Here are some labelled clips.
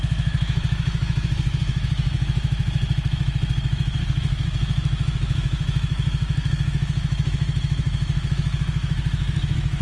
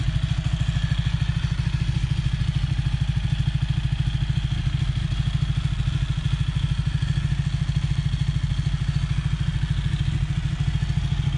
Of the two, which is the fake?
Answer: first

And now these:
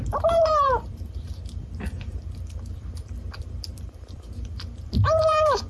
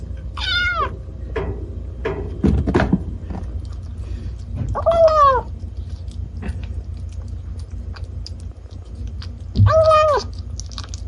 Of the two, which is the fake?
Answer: first